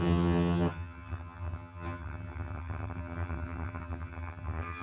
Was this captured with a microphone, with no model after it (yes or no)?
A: no